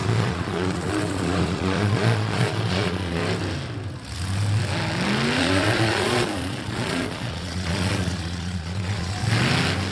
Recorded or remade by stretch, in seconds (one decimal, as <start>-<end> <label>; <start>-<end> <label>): 0.0-3.2 remade; 3.2-5.4 recorded; 5.4-9.2 remade; 9.2-9.9 recorded